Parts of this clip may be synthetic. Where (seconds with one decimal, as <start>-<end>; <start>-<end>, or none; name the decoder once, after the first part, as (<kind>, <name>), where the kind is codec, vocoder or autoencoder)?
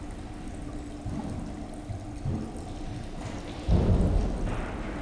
none